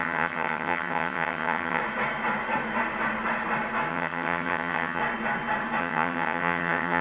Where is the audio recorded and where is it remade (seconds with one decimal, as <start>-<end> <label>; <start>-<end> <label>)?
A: 0.0-1.8 remade; 1.8-3.9 recorded; 3.9-5.0 remade; 5.0-5.8 recorded; 5.8-7.0 remade